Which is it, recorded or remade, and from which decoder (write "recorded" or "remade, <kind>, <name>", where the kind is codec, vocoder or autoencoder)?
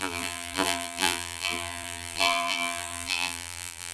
remade, vocoder, BigVGAN v2